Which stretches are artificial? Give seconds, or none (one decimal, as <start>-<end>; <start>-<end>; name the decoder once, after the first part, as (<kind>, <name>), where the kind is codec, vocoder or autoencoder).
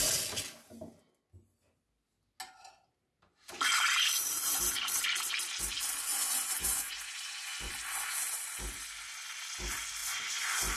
6.1-7.7 (vocoder, Vocos); 10.0-10.8